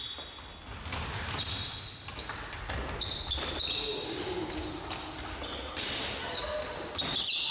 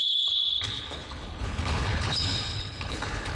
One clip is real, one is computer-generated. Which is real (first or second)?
first